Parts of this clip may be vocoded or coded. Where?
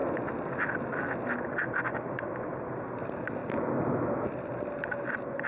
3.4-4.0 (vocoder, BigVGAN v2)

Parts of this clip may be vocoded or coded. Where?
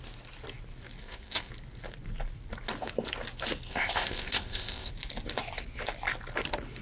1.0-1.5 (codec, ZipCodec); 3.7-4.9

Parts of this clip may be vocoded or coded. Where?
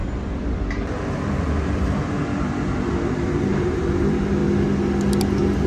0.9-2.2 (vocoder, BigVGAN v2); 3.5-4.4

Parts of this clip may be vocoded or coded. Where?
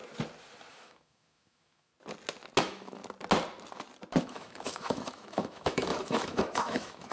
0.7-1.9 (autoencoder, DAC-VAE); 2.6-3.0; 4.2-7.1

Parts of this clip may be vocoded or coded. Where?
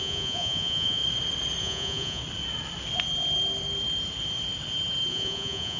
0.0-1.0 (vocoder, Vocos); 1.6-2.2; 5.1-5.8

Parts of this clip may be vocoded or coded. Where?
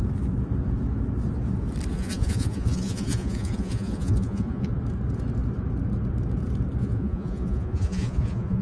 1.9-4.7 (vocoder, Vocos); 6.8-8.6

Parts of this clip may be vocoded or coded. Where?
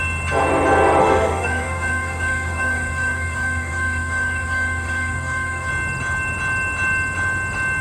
1.0-5.7 (autoencoder, DAC-VAE)